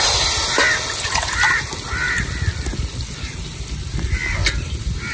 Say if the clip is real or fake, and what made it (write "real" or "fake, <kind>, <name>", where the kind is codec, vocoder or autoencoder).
real